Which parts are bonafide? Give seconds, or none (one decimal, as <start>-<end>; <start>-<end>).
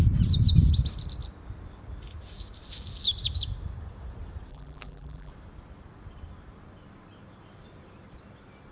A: 0.0-4.5; 5.3-8.7